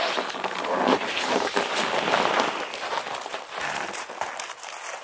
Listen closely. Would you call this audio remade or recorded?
recorded